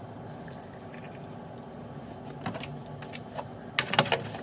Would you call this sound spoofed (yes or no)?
no